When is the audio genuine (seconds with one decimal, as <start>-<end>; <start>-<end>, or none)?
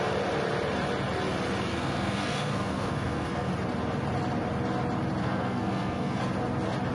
0.0-1.7; 3.5-5.2; 6.2-6.9